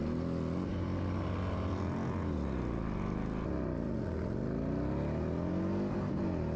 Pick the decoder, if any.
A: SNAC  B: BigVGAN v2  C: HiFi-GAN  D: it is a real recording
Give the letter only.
D